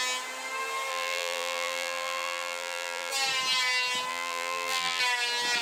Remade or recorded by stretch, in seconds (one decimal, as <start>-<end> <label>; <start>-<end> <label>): 0.0-0.9 recorded; 0.9-3.1 remade; 3.1-4.1 recorded; 4.1-5.0 remade; 5.0-5.6 recorded